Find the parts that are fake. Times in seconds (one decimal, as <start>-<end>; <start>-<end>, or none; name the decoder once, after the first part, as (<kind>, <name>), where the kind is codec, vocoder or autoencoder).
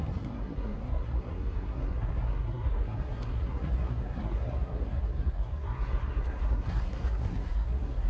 0.0-8.1 (codec, SNAC)